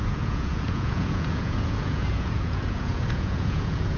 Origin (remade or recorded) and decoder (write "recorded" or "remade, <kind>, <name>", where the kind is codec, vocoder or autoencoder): remade, vocoder, Vocos